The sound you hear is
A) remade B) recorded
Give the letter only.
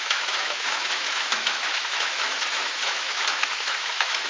A